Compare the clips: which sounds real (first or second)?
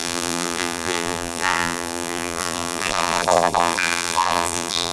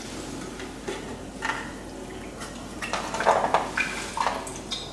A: second